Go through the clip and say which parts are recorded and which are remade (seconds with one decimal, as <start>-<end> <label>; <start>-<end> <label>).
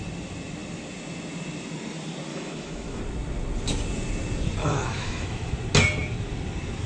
0.0-2.3 recorded; 2.3-3.0 remade; 3.0-4.6 recorded; 4.6-5.5 remade; 5.5-6.9 recorded